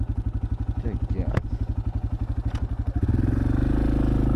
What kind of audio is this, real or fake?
real